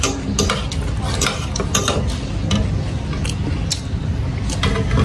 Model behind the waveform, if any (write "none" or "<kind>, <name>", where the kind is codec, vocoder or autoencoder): none